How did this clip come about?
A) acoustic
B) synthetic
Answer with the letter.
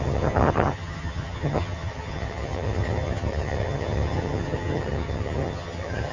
B